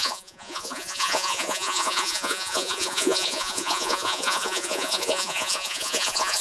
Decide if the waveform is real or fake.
fake